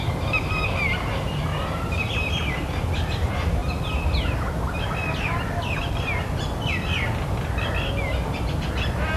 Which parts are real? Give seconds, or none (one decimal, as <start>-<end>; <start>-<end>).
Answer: 0.0-1.5; 2.5-3.6; 4.2-9.2